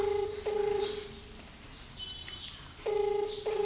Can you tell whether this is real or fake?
fake